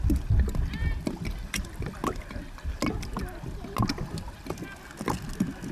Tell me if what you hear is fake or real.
real